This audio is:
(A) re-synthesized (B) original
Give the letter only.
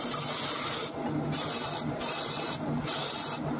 B